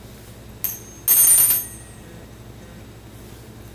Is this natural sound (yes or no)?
yes